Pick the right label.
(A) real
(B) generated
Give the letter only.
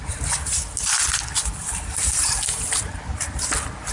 A